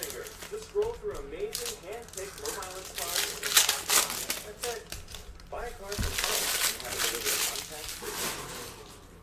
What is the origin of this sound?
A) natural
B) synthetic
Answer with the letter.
A